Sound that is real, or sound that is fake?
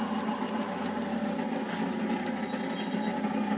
real